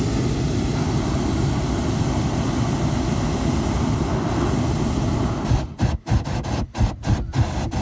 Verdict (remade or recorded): recorded